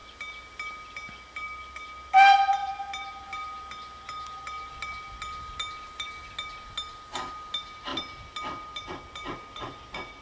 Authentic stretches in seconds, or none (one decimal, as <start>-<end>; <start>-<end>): 0.0-10.2